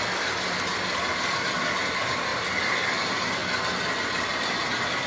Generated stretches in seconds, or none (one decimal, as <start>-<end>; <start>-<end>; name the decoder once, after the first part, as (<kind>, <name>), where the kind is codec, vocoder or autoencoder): none